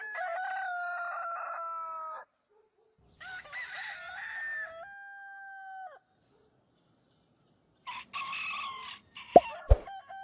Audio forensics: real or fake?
real